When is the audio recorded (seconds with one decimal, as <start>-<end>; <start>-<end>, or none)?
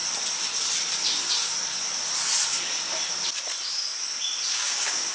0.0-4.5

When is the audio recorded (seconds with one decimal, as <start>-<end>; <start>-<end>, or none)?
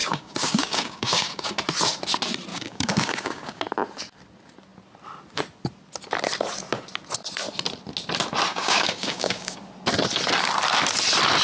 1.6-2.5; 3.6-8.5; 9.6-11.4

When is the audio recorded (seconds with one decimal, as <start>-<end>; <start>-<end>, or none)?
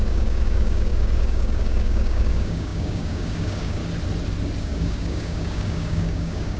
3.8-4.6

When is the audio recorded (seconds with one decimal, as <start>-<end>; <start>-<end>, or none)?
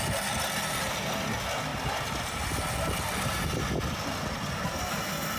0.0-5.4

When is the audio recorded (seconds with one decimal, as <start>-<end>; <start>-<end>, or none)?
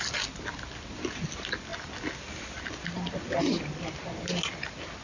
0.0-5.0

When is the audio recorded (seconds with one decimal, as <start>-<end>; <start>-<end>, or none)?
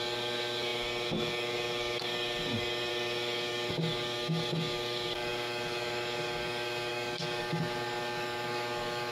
none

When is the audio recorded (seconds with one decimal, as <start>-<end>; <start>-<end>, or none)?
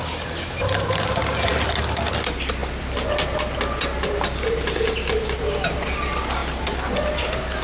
0.0-7.6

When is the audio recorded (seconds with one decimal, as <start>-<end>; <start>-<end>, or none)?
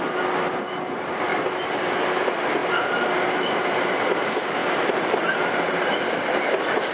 0.0-6.9